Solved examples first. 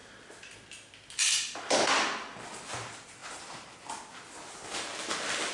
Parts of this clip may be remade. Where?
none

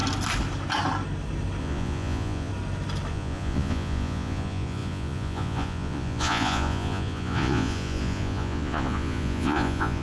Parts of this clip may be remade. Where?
1.6-2.5 (vocoder, Vocos); 3.1-10.0